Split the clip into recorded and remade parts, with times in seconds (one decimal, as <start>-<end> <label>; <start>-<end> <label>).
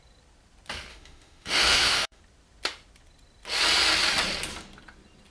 0.0-0.9 recorded; 0.9-2.2 remade; 2.2-5.3 recorded